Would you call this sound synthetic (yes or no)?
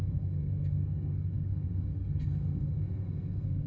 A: yes